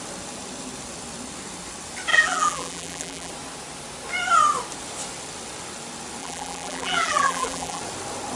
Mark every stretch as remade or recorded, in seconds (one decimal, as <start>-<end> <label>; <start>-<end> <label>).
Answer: 0.0-2.1 recorded; 2.1-3.3 remade; 3.3-6.2 recorded; 6.2-7.8 remade; 7.8-8.4 recorded